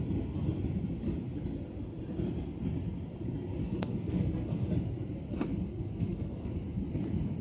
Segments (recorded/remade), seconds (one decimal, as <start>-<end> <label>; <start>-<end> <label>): 0.0-3.6 recorded; 3.6-4.7 remade; 4.7-5.7 recorded; 5.7-6.5 remade; 6.5-7.4 recorded